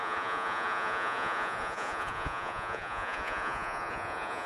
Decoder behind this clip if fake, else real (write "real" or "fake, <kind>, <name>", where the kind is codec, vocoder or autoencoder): fake, vocoder, Vocos